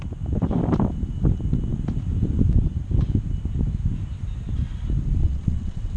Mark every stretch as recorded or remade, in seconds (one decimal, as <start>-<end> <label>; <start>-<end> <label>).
0.0-5.2 recorded; 5.2-6.0 remade